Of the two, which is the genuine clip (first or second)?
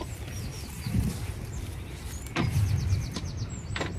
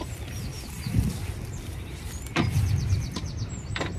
first